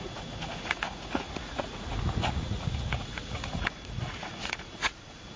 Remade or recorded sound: remade